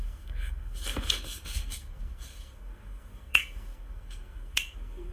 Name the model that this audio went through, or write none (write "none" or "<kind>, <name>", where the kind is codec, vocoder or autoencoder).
codec, SNAC